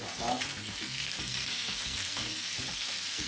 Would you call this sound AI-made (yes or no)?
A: yes